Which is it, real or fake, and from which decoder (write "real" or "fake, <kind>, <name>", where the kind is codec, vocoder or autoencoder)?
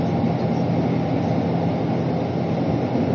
real